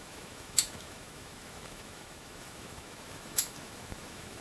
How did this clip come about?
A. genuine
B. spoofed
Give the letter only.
B